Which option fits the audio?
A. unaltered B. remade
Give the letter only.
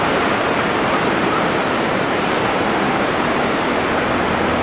A